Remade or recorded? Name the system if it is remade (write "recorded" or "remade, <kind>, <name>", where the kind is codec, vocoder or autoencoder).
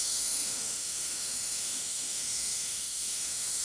remade, autoencoder, DAC-VAE